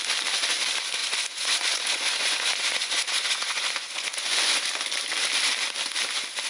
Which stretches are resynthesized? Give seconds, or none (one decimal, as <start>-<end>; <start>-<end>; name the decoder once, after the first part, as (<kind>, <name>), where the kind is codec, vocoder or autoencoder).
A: 1.0-4.6 (vocoder, Vocos)